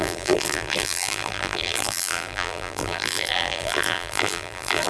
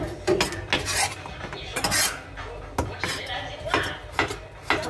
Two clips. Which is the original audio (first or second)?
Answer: second